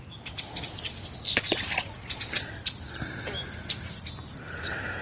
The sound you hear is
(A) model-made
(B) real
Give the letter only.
B